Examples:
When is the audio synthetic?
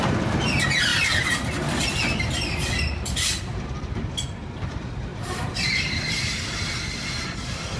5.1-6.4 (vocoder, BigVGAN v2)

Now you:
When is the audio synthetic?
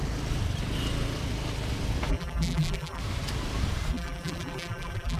2.1-3.0 (vocoder, BigVGAN v2); 3.9-5.2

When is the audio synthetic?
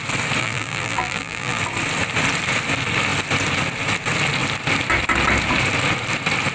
0.4-1.6 (vocoder, BigVGAN v2)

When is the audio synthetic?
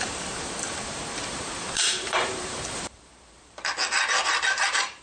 0.0-3.7 (vocoder, BigVGAN v2); 4.5-5.0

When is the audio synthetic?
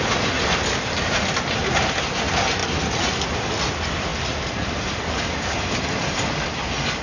0.7-1.3 (vocoder, BigVGAN v2)